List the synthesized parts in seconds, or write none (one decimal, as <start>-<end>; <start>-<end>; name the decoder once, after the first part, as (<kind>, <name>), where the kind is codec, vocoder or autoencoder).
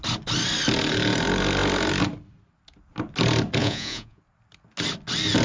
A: 3.6-4.2 (vocoder, Vocos)